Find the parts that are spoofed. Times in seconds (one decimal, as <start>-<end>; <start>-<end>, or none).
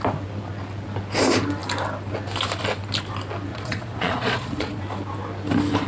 3.5-4.8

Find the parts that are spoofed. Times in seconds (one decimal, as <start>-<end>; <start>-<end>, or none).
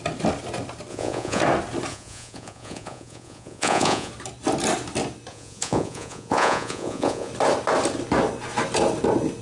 0.9-1.4; 1.9-4.1; 5.3-7.3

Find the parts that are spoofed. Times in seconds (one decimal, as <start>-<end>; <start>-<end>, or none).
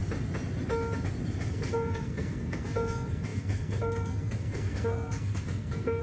1.5-6.0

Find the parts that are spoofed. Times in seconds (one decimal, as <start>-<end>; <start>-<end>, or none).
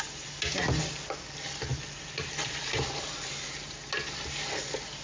1.7-3.1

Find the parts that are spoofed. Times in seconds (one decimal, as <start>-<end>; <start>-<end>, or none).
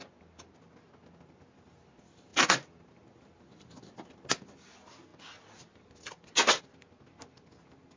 none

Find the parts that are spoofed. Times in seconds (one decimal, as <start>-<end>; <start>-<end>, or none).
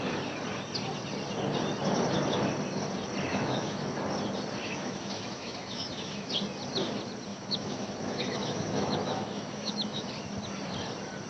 3.3-4.1; 4.6-6.3; 7.3-10.1